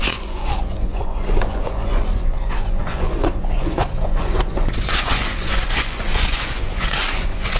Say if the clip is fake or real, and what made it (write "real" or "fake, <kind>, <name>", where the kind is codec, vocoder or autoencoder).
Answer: fake, vocoder, Vocos